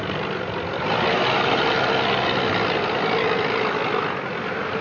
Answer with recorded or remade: recorded